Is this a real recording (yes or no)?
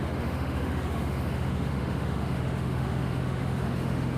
no